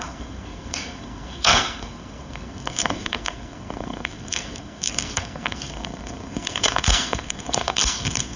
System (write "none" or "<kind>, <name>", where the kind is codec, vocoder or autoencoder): codec, SNAC